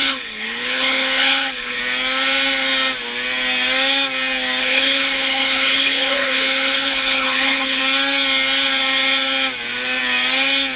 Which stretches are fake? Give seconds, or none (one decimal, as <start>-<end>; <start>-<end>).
0.0-1.8; 4.6-7.8